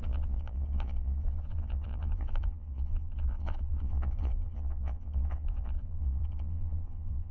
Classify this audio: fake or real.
fake